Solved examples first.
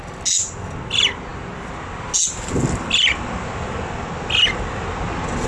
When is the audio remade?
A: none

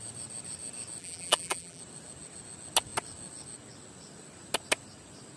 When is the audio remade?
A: 1.0-1.8 (vocoder, BigVGAN v2)

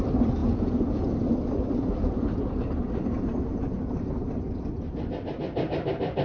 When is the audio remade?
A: 0.4-1.1 (vocoder, Vocos)

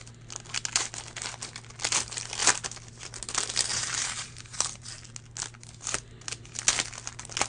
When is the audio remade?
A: 3.7-5.1 (vocoder, BigVGAN v2)